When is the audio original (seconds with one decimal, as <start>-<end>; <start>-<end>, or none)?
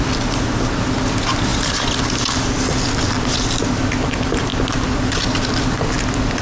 0.0-6.4